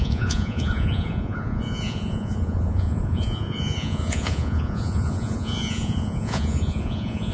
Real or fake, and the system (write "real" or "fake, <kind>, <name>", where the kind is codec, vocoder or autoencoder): fake, vocoder, Vocos